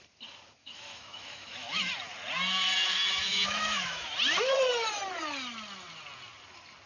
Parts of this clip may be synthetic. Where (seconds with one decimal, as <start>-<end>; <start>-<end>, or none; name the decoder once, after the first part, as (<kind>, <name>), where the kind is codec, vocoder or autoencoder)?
0.6-1.9 (autoencoder, DAC-VAE); 2.8-4.1